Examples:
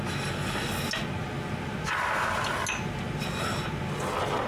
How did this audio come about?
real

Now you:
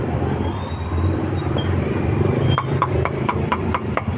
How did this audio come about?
fake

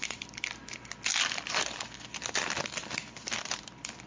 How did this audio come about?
fake